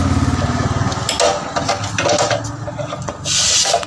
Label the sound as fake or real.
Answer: real